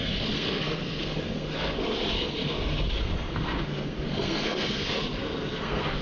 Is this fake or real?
fake